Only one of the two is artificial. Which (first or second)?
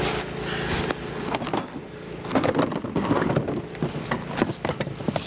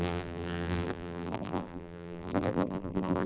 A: second